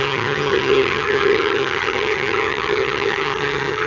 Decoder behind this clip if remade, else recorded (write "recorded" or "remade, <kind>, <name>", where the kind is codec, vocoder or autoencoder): remade, vocoder, HiFi-GAN